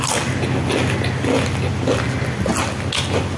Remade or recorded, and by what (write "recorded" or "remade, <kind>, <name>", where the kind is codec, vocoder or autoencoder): recorded